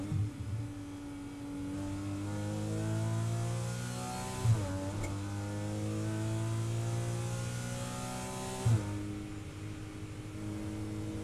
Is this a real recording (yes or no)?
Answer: yes